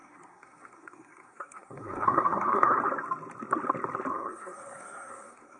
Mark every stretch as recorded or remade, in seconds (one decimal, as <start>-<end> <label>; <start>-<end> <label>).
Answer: 0.0-2.8 remade; 2.8-4.1 recorded; 4.1-5.6 remade